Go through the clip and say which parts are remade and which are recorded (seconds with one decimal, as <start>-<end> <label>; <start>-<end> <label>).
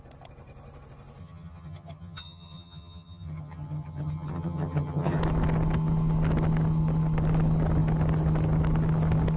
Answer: 0.0-1.2 recorded; 1.2-5.2 remade; 5.2-9.4 recorded